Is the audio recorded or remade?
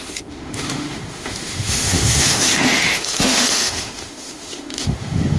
remade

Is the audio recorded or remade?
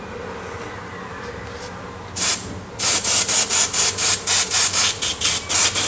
recorded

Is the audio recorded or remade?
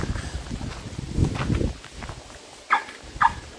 recorded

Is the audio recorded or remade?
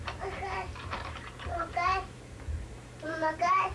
remade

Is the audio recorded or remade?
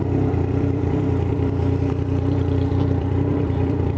remade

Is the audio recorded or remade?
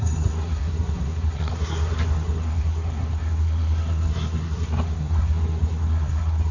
remade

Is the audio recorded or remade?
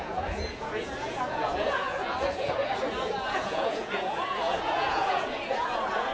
remade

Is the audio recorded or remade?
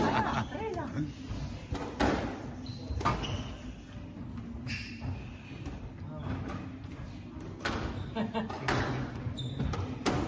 recorded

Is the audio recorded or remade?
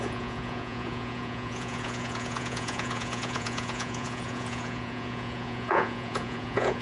remade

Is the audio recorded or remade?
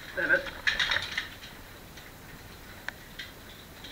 remade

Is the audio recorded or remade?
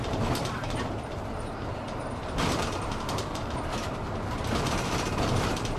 remade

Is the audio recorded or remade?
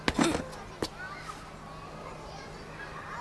recorded